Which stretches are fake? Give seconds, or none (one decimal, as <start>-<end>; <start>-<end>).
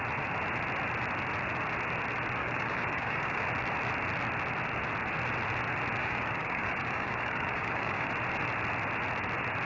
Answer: 2.4-3.4; 6.0-8.1